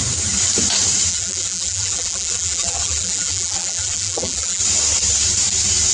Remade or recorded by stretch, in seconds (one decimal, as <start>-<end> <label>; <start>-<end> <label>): 0.0-1.1 recorded; 1.1-4.6 remade; 4.6-5.9 recorded